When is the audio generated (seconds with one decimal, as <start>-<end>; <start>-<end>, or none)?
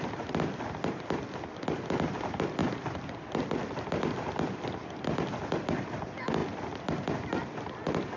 2.6-4.3; 6.4-8.2